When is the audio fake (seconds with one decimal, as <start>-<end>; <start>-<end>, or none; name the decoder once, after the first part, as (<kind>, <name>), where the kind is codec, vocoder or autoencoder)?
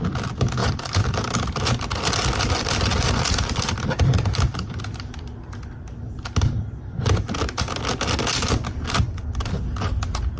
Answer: 0.6-4.8 (vocoder, BigVGAN v2)